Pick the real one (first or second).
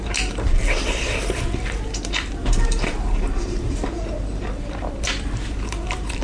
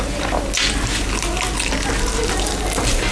second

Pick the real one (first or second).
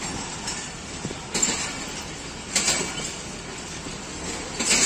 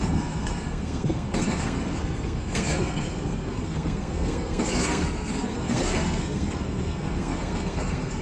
first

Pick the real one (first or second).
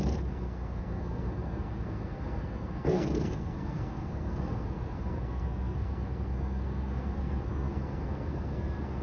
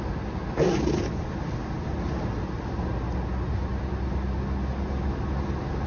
second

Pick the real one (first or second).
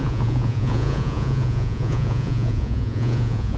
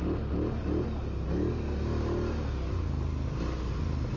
second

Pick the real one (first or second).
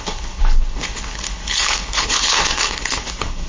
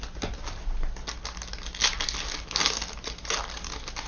second